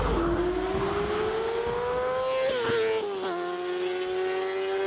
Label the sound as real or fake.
real